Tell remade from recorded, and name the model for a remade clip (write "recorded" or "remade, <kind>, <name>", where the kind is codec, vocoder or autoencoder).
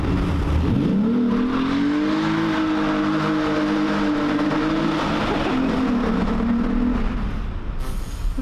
recorded